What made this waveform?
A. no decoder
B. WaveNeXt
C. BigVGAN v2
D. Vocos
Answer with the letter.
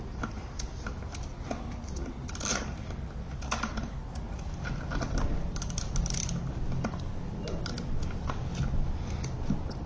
A